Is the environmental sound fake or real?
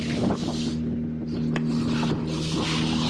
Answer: real